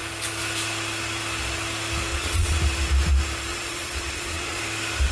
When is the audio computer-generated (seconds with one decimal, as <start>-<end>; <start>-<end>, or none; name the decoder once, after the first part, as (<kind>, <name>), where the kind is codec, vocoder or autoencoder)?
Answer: 2.1-2.6 (vocoder, Vocos); 3.5-4.6